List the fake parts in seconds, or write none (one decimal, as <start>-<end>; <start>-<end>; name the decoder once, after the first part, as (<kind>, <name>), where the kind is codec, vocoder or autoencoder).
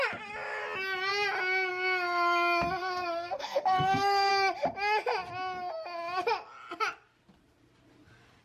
2.8-4.3 (codec, SNAC)